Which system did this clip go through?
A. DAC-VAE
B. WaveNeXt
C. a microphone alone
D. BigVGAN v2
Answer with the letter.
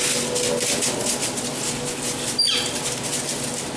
C